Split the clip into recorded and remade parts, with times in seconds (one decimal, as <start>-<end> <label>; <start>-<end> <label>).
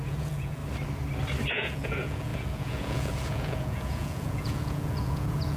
0.0-0.6 remade; 0.6-1.5 recorded; 1.5-5.6 remade